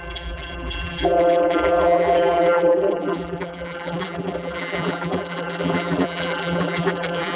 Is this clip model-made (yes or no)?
yes